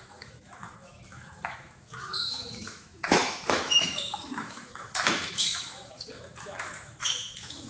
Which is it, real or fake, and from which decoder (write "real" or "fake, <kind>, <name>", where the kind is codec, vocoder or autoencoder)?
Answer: fake, autoencoder, DAC-VAE